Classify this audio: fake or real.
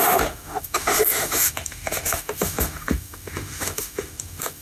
fake